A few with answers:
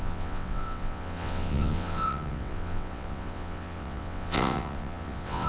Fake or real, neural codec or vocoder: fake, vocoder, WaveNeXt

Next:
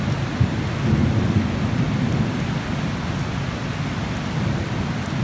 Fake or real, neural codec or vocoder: real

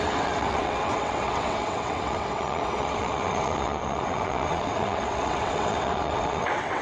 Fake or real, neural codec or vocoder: fake, vocoder, WaveNeXt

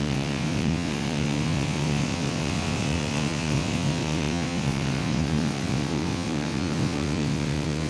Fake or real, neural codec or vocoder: fake, vocoder, WaveNeXt